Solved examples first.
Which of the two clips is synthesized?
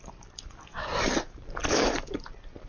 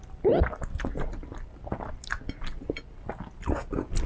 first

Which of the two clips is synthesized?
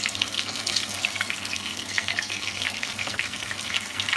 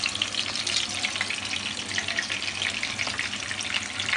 first